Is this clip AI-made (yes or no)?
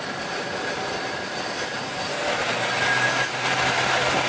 no